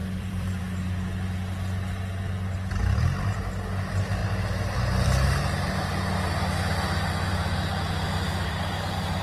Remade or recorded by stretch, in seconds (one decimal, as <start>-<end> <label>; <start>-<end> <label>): 0.0-0.6 remade; 0.6-4.2 recorded; 4.2-5.4 remade; 5.4-9.2 recorded